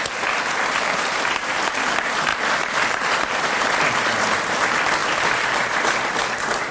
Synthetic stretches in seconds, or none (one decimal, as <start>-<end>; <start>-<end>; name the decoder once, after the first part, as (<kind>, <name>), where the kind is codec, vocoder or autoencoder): 2.3-4.0 (vocoder, BigVGAN v2); 5.0-6.7